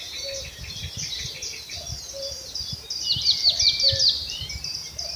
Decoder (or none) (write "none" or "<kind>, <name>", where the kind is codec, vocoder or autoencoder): vocoder, BigVGAN v2